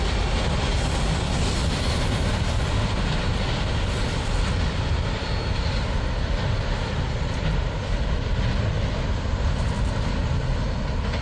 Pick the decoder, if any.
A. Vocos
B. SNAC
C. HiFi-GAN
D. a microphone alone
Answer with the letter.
D